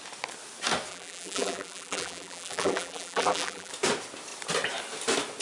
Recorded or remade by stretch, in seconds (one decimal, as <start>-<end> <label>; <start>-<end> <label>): 0.0-0.9 recorded; 0.9-3.7 remade; 3.7-5.4 recorded